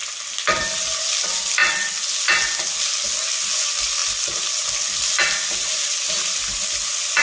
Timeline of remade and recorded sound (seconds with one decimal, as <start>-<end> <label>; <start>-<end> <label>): 0.0-7.2 recorded